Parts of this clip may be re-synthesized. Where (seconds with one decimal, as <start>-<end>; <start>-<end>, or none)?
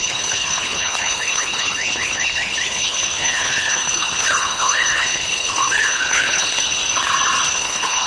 0.0-6.8; 7.5-8.1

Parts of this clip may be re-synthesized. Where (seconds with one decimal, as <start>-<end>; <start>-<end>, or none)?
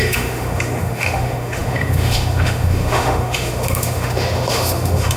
0.0-5.2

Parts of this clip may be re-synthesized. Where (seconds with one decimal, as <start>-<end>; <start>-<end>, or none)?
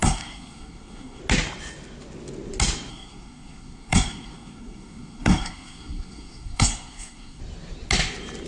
0.0-1.2; 2.9-7.4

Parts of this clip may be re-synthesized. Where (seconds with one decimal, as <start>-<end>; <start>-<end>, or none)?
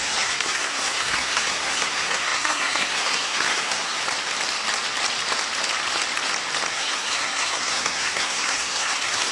0.0-4.0; 6.7-9.3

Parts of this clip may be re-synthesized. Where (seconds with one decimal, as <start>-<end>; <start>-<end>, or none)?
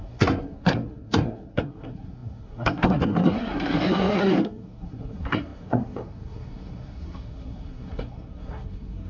0.0-9.1